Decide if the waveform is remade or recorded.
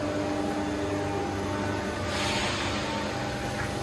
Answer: recorded